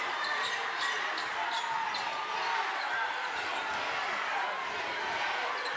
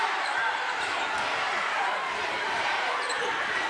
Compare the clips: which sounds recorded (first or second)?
first